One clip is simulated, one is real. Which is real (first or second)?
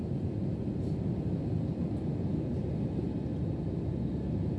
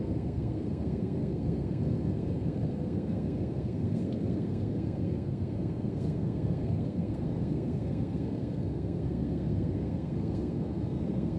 first